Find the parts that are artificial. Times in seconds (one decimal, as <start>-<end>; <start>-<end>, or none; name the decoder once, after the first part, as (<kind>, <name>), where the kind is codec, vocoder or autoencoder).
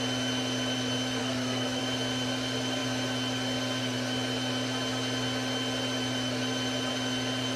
1.2-1.8 (codec, SNAC)